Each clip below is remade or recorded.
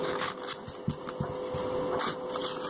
recorded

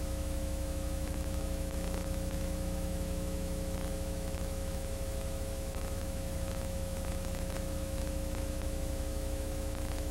remade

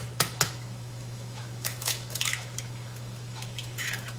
remade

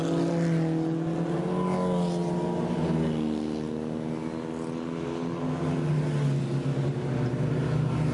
recorded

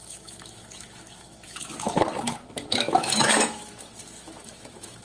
remade